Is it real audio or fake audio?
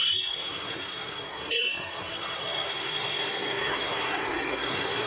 fake